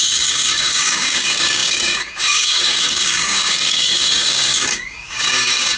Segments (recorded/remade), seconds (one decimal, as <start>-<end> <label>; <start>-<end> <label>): 0.0-5.8 remade